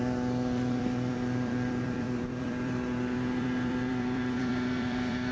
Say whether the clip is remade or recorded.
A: remade